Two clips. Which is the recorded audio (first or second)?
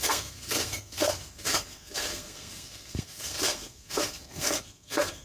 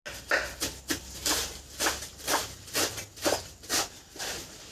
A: second